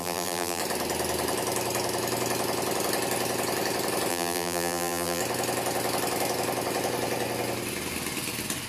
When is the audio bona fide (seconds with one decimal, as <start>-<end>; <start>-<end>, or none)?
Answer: 0.6-4.1; 5.2-8.7